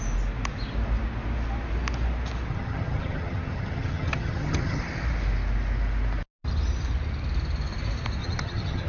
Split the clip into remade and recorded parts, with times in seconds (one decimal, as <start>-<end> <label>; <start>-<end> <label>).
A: 0.0-2.5 recorded; 2.5-4.8 remade; 4.8-8.2 recorded; 8.2-8.9 remade